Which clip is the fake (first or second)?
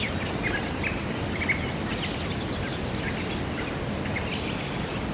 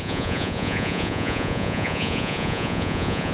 second